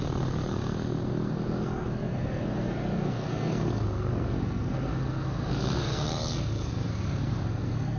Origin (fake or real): fake